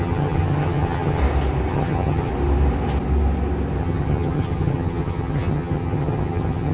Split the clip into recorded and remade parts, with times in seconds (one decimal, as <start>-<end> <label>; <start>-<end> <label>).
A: 0.0-1.2 remade; 1.2-1.7 recorded; 1.7-2.3 remade; 2.3-3.8 recorded; 3.8-6.7 remade